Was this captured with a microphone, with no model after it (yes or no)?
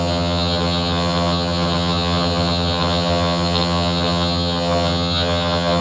no